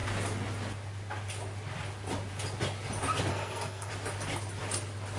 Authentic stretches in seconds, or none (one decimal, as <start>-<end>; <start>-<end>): 0.0-3.3; 3.9-5.2